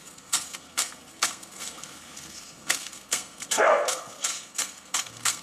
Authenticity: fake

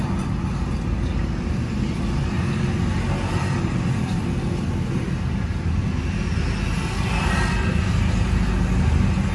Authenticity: real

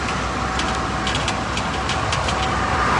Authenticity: real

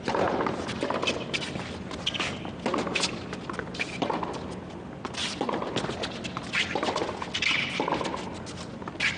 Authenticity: real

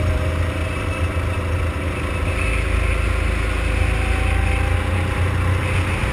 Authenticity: real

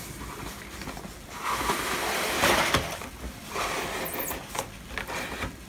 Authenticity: real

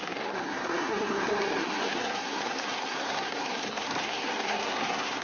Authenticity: fake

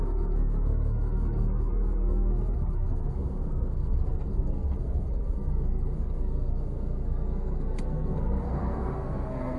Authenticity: fake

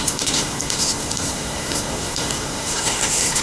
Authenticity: fake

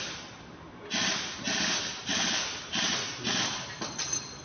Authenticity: real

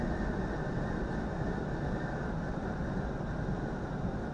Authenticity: real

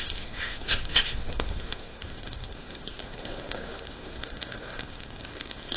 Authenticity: fake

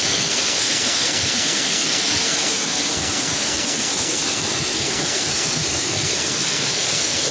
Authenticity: fake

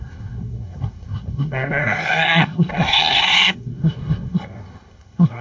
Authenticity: fake